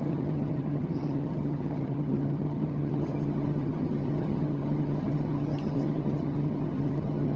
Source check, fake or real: fake